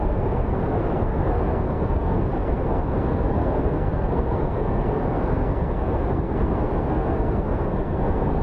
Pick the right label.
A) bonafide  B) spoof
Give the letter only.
B